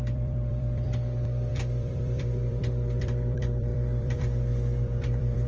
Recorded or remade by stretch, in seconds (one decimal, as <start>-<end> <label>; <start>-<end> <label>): 0.0-5.5 remade